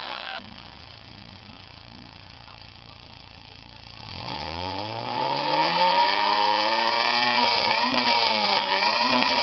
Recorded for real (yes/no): no